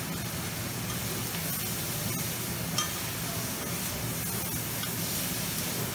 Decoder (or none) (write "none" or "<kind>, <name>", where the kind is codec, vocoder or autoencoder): none